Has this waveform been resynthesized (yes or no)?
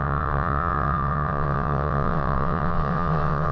yes